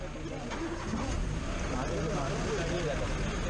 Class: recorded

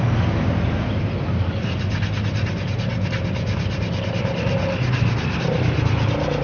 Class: recorded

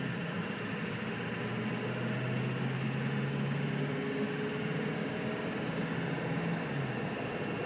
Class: recorded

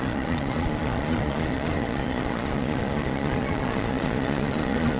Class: remade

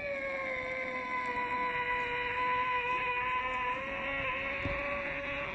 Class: recorded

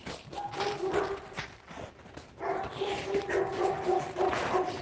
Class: recorded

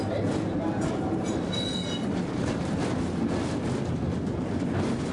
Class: recorded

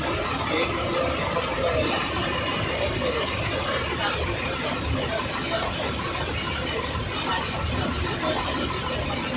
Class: recorded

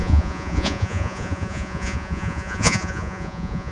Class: remade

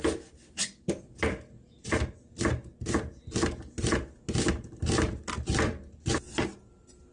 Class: recorded